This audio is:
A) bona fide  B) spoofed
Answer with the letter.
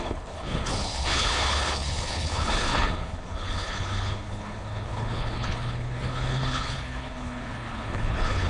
B